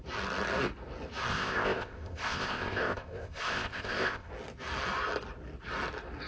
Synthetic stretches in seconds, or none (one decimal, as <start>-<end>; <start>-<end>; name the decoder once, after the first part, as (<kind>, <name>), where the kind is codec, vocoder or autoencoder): 1.3-4.3 (codec, ZipCodec)